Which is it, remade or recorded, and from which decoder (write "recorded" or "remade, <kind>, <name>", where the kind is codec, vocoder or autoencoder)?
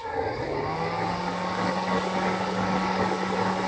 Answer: remade, codec, DAC